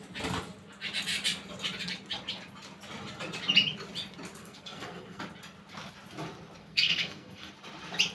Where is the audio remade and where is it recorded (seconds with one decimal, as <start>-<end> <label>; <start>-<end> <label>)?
0.0-4.4 recorded; 4.4-5.2 remade; 5.2-6.6 recorded; 6.6-7.5 remade; 7.5-8.1 recorded